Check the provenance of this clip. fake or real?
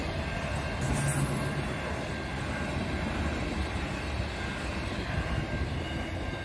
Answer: real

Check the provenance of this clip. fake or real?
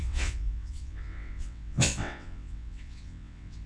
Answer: fake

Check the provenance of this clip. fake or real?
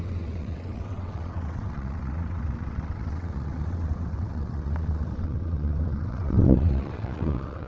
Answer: fake